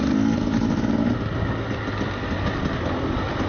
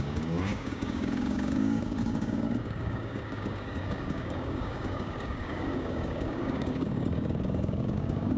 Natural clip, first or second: first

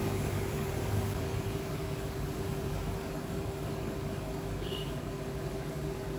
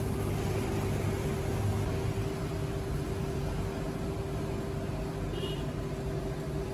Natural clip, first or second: second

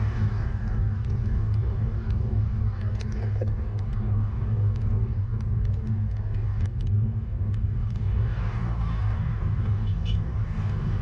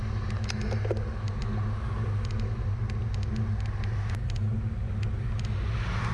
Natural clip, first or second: second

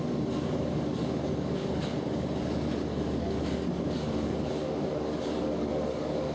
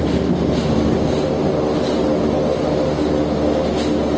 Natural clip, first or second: second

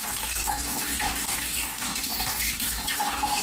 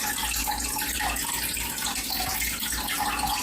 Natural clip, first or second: second